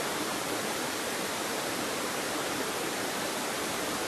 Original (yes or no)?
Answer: no